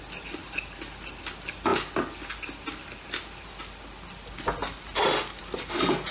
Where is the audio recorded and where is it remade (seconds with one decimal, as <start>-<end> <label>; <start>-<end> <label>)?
0.0-6.1 recorded